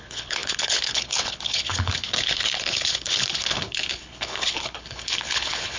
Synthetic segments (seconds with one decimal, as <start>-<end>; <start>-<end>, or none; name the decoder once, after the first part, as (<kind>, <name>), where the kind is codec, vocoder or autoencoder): 0.0-5.8 (codec, HILCodec)

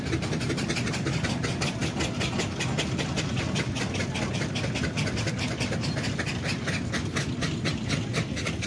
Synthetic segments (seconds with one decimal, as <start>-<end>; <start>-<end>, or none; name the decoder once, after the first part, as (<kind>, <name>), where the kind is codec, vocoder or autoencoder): none

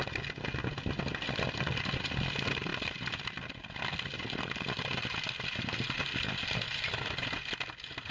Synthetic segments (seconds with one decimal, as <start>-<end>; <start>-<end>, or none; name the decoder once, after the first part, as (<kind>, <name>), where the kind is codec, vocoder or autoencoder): none

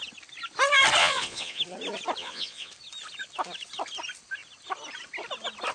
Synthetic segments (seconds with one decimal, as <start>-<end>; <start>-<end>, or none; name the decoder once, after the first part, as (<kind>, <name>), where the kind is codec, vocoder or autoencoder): 1.0-1.6 (vocoder, Vocos); 2.2-2.7

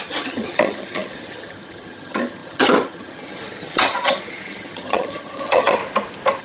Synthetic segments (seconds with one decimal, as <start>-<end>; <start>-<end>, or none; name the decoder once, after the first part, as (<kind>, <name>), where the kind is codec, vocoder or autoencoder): 0.0-5.8 (vocoder, HiFi-GAN)

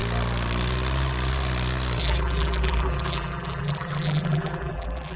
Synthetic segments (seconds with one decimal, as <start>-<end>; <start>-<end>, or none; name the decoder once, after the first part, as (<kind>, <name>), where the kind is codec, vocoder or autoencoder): 2.0-5.2 (vocoder, BigVGAN v2)

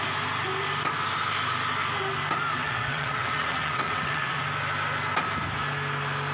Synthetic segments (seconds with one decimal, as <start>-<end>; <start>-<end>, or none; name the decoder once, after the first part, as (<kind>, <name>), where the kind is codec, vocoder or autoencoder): 2.6-4.4 (vocoder, WaveNeXt)

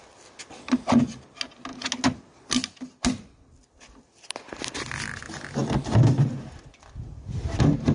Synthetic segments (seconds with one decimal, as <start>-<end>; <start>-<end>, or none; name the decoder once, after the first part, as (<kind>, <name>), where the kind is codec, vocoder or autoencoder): none